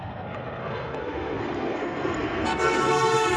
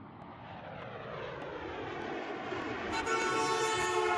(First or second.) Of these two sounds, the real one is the second